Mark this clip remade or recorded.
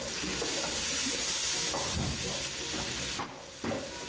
recorded